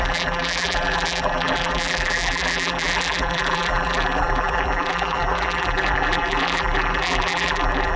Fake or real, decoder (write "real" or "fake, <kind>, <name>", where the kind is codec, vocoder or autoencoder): fake, vocoder, BigVGAN v2